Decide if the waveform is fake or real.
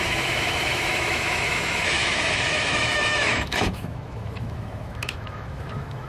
fake